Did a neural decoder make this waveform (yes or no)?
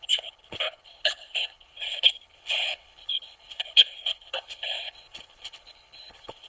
yes